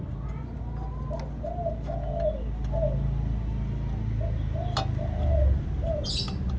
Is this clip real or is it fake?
real